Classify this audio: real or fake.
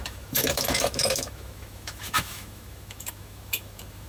fake